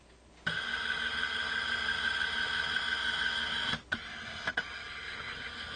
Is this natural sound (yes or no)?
yes